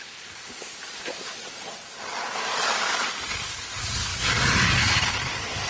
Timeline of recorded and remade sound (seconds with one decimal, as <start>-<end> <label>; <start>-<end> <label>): 0.0-5.7 recorded